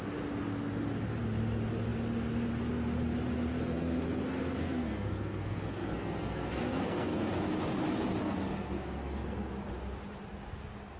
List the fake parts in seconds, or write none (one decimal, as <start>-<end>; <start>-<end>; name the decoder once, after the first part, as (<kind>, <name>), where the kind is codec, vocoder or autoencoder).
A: 3.5-7.3 (codec, SNAC); 8.1-9.5